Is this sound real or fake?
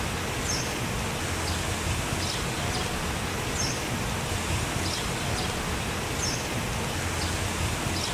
real